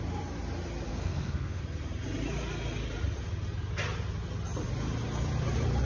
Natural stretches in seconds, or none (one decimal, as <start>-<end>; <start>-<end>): 0.0-0.9; 1.6-5.8